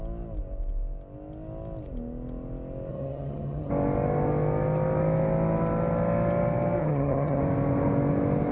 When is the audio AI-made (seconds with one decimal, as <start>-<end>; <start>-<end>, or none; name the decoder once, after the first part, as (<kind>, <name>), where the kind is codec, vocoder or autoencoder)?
2.9-3.7 (vocoder, HiFi-GAN); 6.8-7.4